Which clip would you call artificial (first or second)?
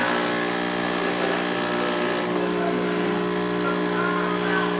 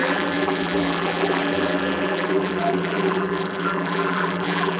second